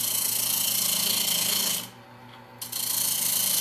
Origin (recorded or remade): recorded